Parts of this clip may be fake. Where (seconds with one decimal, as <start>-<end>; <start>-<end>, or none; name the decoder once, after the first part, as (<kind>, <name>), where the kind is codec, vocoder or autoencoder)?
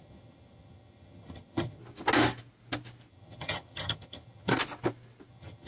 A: 0.0-1.8 (vocoder, HiFi-GAN); 3.1-4.5; 5.3-5.7